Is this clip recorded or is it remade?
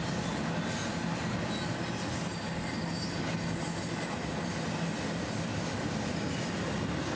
recorded